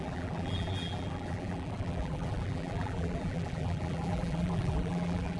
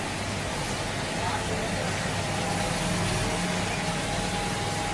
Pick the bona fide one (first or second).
second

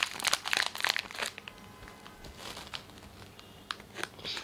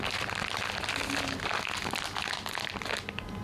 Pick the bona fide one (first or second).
first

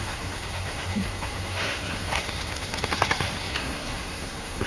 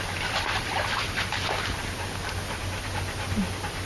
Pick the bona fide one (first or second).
second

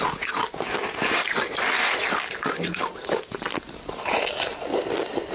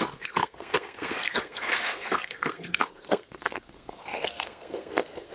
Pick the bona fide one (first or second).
first